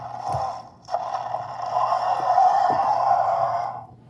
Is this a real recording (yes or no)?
yes